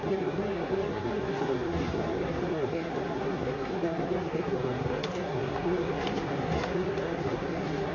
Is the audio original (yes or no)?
no